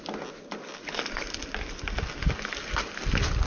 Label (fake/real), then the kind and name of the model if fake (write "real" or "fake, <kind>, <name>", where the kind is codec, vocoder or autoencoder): real